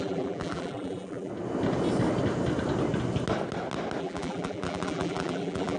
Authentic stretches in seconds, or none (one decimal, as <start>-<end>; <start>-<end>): 1.3-4.0